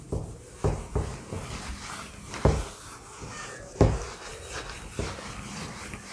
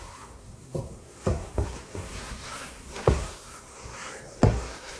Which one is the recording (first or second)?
first